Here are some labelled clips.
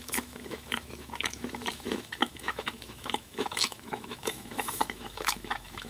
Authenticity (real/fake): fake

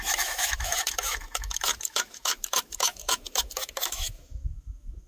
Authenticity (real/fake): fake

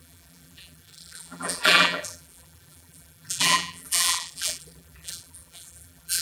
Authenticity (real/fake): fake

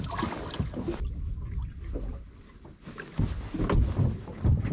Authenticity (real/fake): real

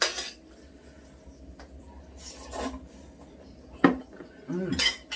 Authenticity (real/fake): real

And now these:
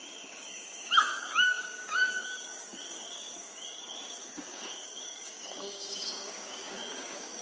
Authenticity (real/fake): fake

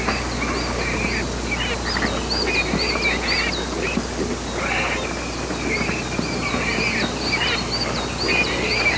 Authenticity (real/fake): real